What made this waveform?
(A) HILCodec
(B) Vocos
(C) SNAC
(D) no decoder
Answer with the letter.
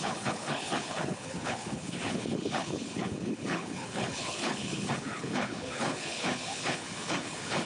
A